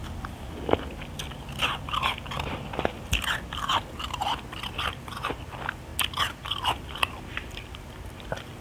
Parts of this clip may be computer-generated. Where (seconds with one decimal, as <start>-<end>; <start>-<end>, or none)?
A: 2.9-5.9; 6.6-8.6